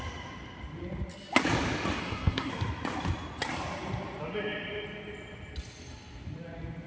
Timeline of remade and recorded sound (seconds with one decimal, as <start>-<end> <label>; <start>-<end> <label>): 0.0-2.0 recorded; 2.0-2.5 remade; 2.5-6.9 recorded

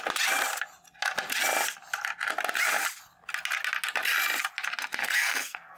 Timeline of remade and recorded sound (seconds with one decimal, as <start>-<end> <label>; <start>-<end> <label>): 0.0-5.0 recorded; 5.0-5.8 remade

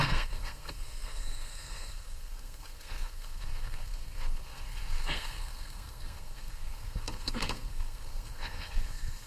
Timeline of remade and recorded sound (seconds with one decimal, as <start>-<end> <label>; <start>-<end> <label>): 0.0-9.3 remade

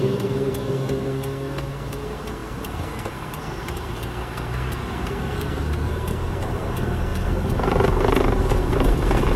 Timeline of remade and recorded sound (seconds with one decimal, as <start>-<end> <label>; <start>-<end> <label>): 0.0-9.4 remade